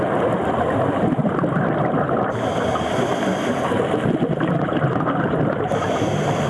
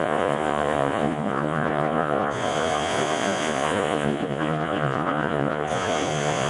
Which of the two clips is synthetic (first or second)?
second